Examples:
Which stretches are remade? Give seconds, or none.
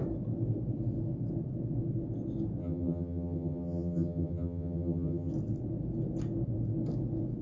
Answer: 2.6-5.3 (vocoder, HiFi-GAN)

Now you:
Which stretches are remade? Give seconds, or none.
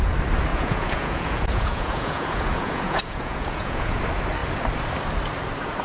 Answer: 0.5-4.0 (vocoder, Vocos)